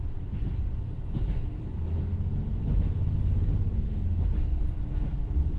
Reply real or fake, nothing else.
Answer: real